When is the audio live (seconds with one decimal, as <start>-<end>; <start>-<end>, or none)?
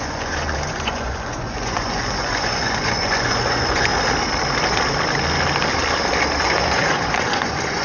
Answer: 3.9-6.4